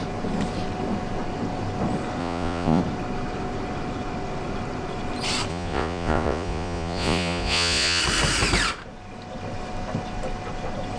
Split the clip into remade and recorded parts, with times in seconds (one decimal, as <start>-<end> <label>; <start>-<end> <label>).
0.0-2.2 recorded; 2.2-2.8 remade; 2.8-5.5 recorded; 5.5-8.0 remade; 8.0-11.0 recorded